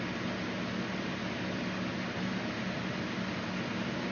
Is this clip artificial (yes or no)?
no